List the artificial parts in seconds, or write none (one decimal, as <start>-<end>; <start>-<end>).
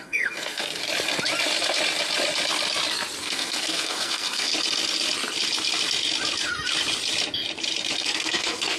0.0-0.8; 3.2-4.5; 8.0-8.8